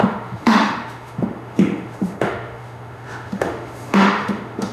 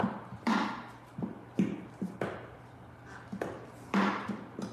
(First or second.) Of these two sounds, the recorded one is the second